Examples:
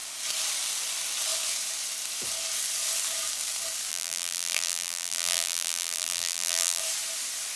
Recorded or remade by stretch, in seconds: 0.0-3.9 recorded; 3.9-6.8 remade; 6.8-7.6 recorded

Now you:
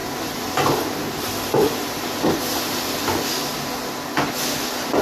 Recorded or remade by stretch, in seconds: 0.0-2.0 remade; 2.0-5.0 recorded

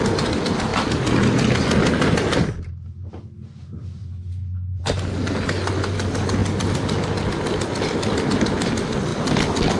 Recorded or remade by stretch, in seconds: 0.0-0.7 recorded; 0.7-3.1 remade; 3.1-6.4 recorded; 6.4-7.8 remade; 7.8-9.1 recorded; 9.1-9.8 remade

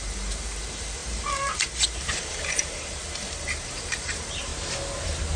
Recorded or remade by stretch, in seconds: 0.0-4.5 remade; 4.5-5.4 recorded